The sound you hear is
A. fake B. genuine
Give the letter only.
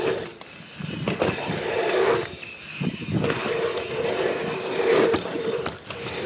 B